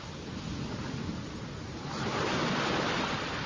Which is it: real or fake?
real